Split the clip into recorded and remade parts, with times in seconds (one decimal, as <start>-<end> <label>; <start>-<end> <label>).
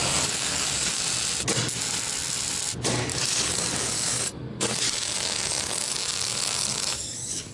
0.0-1.0 remade; 1.0-3.1 recorded; 3.1-7.5 remade